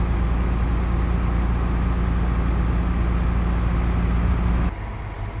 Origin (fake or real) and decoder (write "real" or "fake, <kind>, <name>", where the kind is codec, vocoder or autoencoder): real